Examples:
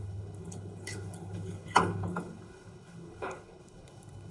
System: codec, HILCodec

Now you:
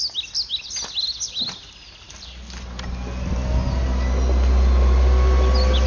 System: none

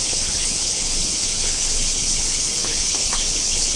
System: codec, HILCodec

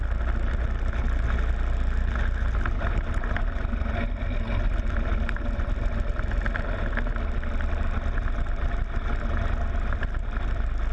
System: none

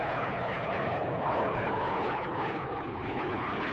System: codec, HILCodec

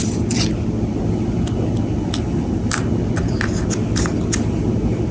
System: none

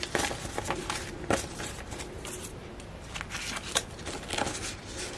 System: none